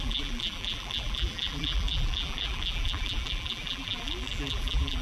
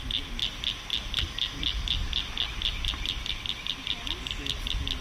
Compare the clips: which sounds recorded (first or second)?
second